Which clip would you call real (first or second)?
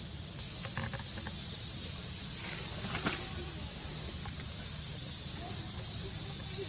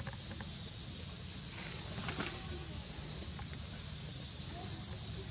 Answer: second